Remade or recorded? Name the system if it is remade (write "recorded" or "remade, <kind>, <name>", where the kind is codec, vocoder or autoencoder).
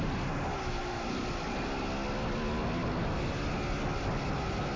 recorded